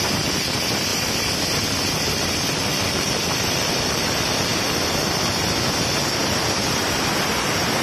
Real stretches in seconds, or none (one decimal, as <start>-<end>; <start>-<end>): 0.9-2.2; 4.5-6.3